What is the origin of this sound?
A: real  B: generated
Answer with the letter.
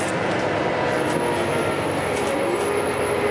A